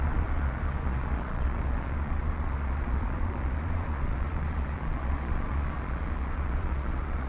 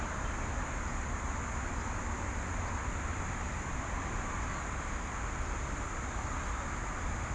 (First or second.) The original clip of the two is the second